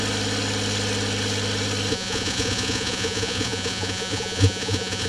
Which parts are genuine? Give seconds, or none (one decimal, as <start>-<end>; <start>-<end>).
0.0-1.9